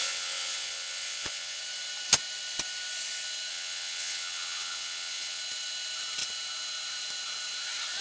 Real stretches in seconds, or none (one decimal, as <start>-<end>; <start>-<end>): 1.6-3.5; 5.4-8.0